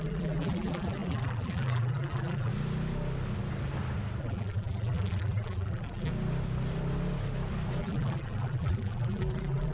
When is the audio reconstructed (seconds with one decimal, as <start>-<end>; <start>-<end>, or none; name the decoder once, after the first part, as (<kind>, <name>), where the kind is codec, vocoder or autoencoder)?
0.0-2.5 (vocoder, BigVGAN v2); 4.2-6.1; 7.8-9.7